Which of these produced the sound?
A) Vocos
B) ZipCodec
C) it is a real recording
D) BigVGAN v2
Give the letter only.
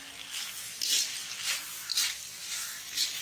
C